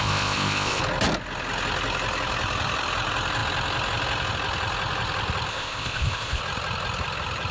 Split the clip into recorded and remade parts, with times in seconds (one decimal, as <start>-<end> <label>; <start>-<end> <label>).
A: 0.0-0.8 remade; 0.8-5.5 recorded; 5.5-6.4 remade; 6.4-7.5 recorded